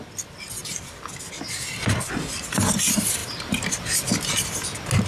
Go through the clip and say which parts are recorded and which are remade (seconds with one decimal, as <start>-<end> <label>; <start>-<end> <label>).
0.0-3.2 recorded; 3.2-4.4 remade; 4.4-5.1 recorded